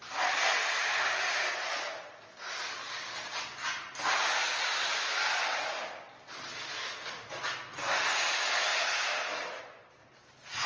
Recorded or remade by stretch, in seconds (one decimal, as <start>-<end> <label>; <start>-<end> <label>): 0.0-10.0 recorded; 10.0-10.7 remade